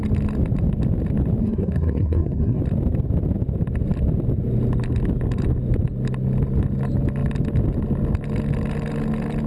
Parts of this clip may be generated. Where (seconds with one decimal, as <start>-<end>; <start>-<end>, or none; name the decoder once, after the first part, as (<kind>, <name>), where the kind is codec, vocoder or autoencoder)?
1.4-2.6 (codec, SNAC)